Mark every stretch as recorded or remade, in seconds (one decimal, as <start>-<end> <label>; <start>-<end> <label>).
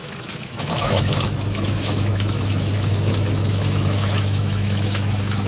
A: 0.0-5.5 remade